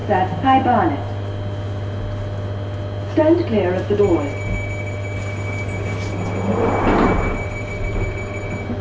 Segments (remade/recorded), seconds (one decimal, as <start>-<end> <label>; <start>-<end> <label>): 0.0-8.8 recorded